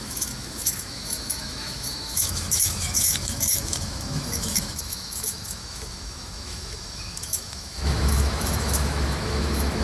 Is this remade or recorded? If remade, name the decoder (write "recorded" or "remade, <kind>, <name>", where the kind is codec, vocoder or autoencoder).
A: remade, autoencoder, DAC-VAE